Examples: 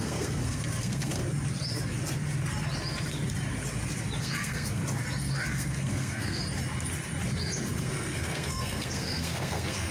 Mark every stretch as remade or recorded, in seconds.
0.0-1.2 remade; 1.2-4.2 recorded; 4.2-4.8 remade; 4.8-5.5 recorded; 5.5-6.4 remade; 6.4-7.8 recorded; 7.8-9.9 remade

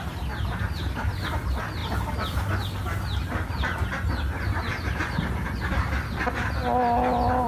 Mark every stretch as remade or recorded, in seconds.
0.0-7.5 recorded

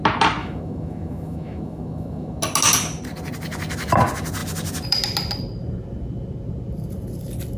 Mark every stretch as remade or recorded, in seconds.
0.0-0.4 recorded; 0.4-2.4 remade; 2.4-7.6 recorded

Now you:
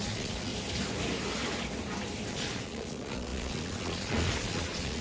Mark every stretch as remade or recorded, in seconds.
0.0-0.5 remade; 0.5-2.3 recorded; 2.3-5.0 remade

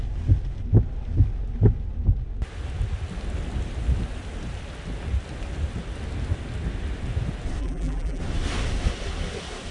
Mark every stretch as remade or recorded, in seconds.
0.0-7.6 recorded; 7.6-8.2 remade; 8.2-9.7 recorded

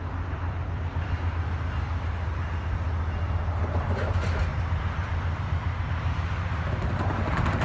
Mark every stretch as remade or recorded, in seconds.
0.0-4.5 recorded; 4.5-5.8 remade; 5.8-7.6 recorded

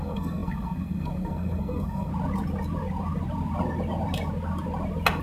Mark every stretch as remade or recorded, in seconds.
0.0-2.1 remade; 2.1-5.2 recorded